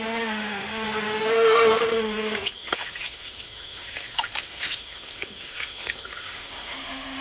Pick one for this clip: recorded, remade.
remade